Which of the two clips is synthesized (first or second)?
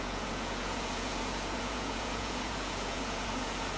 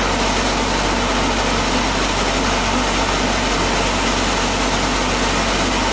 first